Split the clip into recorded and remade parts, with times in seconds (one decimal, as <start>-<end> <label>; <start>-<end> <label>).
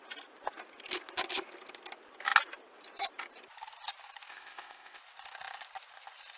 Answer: 0.0-4.3 recorded; 4.3-5.0 remade; 5.0-6.4 recorded